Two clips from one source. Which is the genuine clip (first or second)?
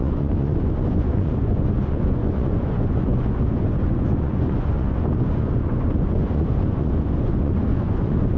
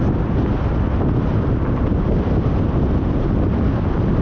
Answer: second